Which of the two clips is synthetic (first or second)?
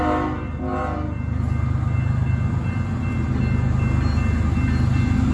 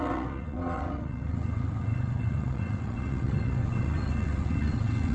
second